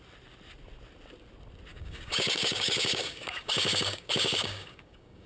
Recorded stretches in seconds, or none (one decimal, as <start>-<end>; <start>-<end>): 0.0-1.7